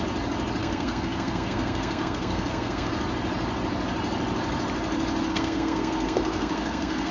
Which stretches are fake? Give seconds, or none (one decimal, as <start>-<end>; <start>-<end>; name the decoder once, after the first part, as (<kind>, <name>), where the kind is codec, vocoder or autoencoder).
0.6-2.9 (codec, SNAC); 5.3-7.1